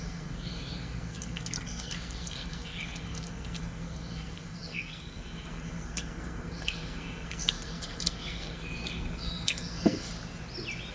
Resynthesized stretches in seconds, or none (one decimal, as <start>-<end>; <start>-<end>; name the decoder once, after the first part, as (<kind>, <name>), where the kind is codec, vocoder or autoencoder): 0.0-10.1 (codec, SNAC)